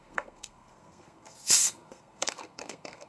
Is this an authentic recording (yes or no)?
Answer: no